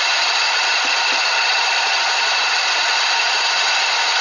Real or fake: real